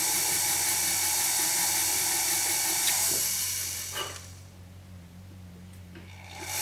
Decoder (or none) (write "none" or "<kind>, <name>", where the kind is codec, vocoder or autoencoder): none